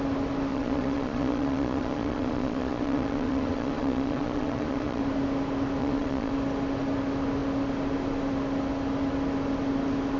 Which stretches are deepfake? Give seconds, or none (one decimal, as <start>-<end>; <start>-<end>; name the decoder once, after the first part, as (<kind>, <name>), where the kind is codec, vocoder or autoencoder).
0.5-5.0 (vocoder, Vocos); 5.8-6.3